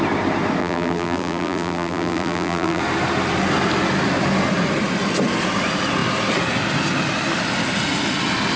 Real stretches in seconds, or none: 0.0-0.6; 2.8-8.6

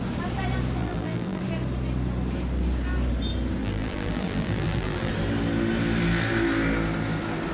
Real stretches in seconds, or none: 0.0-0.8; 1.4-3.6; 5.1-7.5

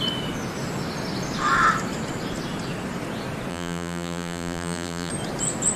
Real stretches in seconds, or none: 0.0-3.5; 5.1-5.8

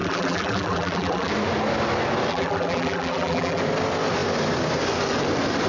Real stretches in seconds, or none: 1.3-2.3; 3.6-5.7